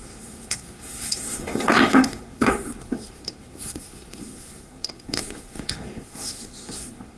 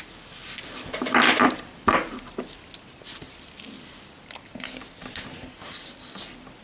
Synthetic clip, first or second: first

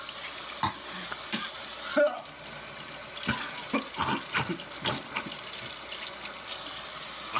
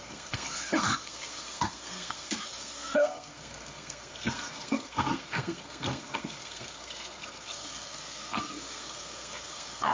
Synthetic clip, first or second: second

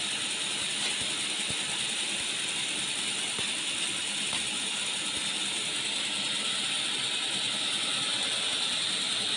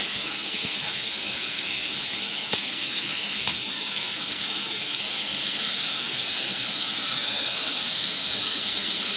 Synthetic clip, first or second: second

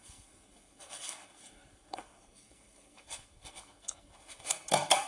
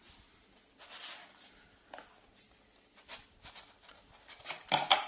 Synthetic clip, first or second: first